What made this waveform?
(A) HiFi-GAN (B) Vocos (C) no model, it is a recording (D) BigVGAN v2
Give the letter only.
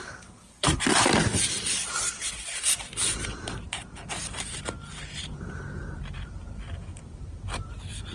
D